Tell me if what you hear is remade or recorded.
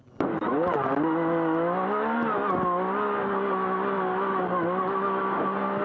recorded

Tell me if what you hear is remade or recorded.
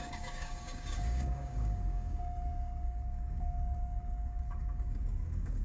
remade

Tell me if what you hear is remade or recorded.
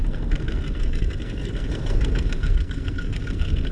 remade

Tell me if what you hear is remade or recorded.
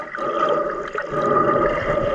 recorded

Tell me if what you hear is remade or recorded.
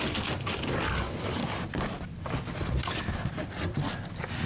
recorded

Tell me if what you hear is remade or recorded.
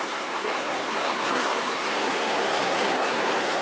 remade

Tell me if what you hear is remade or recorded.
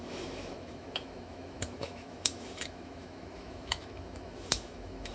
remade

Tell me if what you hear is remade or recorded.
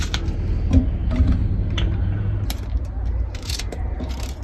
remade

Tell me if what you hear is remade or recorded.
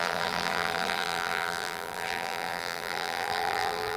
remade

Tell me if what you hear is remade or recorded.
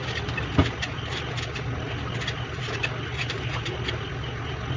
recorded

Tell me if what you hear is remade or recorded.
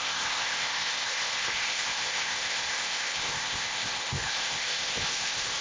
remade